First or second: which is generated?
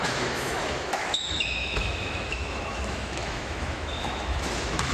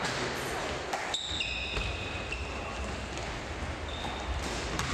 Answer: first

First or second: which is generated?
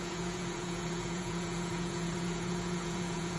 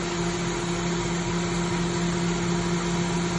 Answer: first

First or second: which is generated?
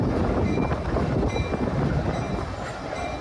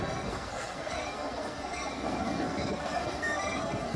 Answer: second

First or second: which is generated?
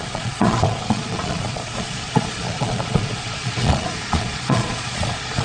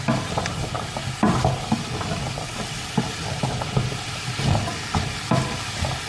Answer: first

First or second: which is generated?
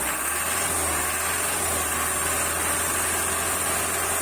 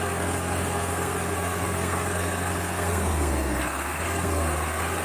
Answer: second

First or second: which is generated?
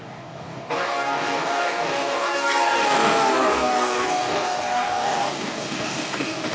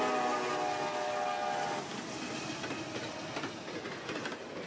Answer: first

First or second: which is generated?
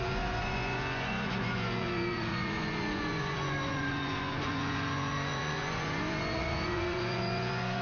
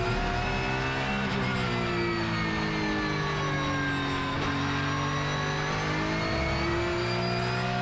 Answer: first